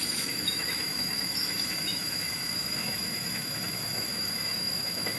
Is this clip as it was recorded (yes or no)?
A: no